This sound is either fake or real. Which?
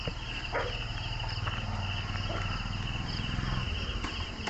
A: real